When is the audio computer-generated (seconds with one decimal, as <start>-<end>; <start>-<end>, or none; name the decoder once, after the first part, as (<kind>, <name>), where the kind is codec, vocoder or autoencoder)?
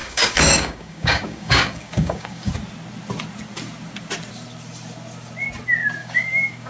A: 0.0-2.5 (codec, DAC); 6.0-6.7